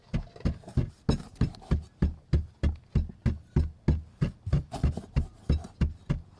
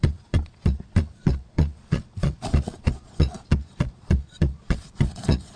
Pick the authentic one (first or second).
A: first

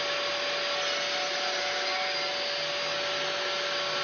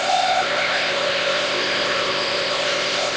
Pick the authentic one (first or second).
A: first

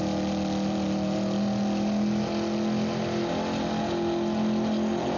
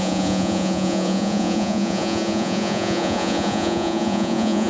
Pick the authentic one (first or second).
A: first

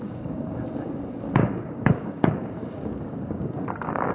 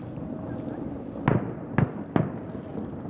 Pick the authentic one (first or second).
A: second